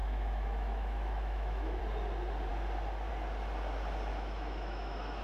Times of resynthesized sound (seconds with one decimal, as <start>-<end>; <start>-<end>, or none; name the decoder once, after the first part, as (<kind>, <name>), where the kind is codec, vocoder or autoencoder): 0.0-1.8 (autoencoder, DAC-VAE); 4.1-5.2